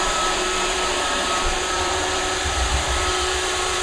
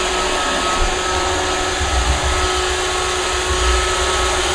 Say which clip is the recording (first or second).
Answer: second